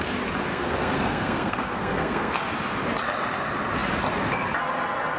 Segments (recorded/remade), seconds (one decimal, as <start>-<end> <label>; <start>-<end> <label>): 0.0-0.5 recorded; 0.5-2.4 remade; 2.4-5.2 recorded